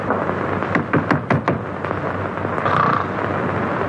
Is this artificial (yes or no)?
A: no